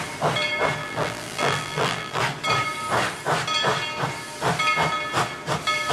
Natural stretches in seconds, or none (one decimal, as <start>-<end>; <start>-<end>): 0.0-0.8; 2.2-5.9